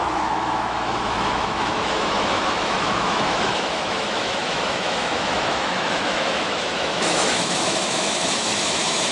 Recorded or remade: remade